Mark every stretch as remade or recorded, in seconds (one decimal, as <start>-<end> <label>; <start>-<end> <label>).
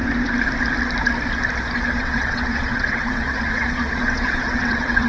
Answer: 0.0-2.0 recorded; 2.0-5.1 remade